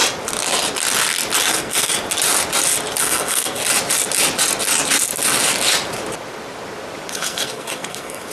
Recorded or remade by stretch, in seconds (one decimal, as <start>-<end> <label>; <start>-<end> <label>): 0.0-1.5 recorded; 1.5-1.9 remade; 1.9-3.0 recorded; 3.0-3.6 remade; 3.6-7.1 recorded; 7.1-8.3 remade